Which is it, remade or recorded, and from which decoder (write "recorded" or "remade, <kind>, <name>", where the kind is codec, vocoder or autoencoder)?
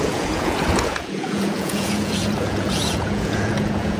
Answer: remade, vocoder, Vocos